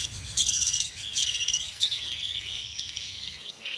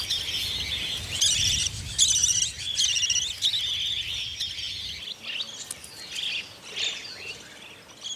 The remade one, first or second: first